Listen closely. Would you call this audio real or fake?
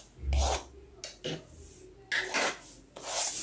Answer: real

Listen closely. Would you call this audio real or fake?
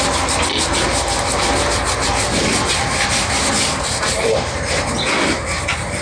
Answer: real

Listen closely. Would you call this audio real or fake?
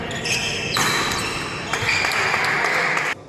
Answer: real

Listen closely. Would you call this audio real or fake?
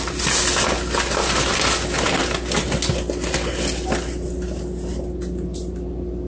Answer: real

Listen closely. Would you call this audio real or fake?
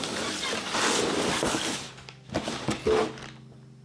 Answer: real